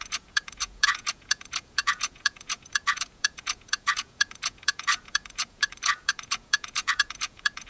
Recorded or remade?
remade